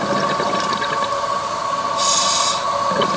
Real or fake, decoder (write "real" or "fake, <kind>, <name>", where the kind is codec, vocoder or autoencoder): real